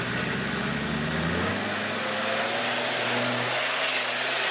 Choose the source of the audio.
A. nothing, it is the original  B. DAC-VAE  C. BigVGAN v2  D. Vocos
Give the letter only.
A